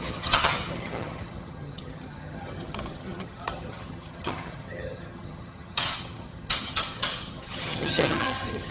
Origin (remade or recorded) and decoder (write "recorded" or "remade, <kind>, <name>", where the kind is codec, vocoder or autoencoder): remade, vocoder, HiFi-GAN